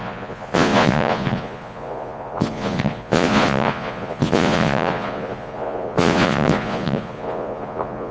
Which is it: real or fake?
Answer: fake